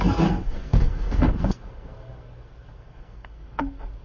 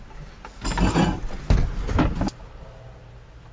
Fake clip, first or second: first